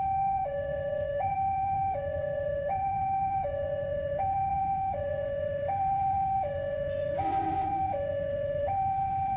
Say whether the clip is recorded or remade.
remade